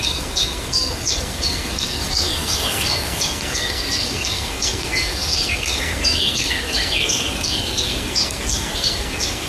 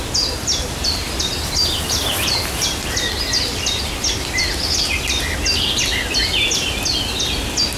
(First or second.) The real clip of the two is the second